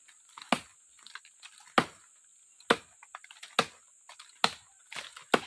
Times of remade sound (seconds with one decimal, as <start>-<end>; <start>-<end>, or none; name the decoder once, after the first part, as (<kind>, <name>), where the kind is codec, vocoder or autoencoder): none

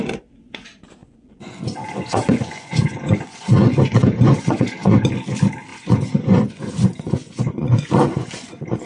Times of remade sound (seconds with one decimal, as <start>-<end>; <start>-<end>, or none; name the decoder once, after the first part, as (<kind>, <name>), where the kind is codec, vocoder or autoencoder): 1.0-5.1 (vocoder, Vocos); 5.7-8.9

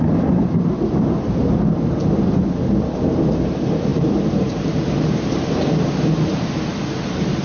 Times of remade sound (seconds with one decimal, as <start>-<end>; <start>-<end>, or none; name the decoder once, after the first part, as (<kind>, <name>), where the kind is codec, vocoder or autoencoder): 3.9-5.9 (vocoder, BigVGAN v2)

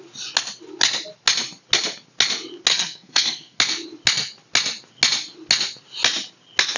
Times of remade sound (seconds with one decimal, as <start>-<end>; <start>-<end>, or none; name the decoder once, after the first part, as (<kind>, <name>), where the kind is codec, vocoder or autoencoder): 2.7-3.6 (codec, SNAC)

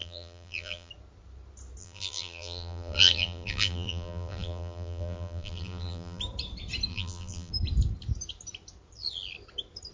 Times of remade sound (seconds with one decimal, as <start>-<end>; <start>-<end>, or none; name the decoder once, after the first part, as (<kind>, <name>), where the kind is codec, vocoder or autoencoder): 0.0-0.9 (vocoder, BigVGAN v2); 1.8-6.2; 6.9-7.5